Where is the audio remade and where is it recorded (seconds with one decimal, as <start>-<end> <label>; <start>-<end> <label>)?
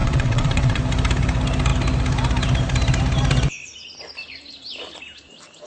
0.0-0.8 remade; 0.8-5.7 recorded